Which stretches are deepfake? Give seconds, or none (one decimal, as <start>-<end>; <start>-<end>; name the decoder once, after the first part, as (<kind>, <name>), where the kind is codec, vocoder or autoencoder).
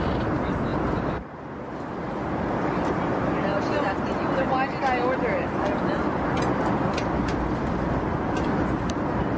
none